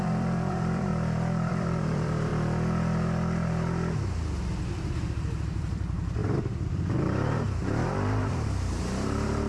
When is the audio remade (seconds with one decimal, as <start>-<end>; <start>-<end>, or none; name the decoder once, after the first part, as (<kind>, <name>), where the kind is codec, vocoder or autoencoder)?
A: 0.0-0.9 (vocoder, BigVGAN v2); 1.5-2.3; 4.8-9.5